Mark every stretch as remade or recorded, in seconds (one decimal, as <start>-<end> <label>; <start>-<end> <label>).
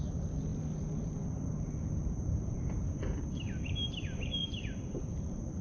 0.0-0.5 remade; 0.5-1.7 recorded; 1.7-5.6 remade